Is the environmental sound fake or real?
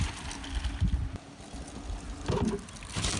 real